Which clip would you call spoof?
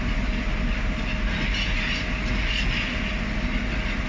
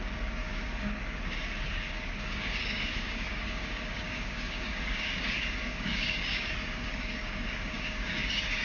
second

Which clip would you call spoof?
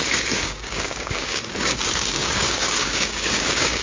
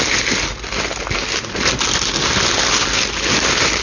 first